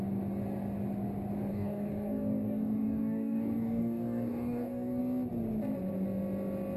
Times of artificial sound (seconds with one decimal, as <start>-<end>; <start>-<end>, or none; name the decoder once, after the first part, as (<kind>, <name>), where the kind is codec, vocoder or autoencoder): 1.5-5.0 (codec, DAC)